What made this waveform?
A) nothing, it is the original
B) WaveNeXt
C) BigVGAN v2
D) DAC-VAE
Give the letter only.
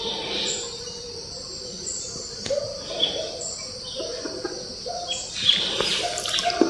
A